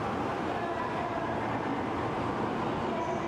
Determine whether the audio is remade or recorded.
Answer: recorded